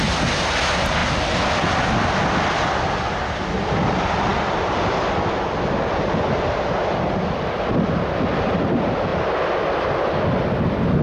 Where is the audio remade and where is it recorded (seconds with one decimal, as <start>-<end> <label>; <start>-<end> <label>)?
0.0-11.0 recorded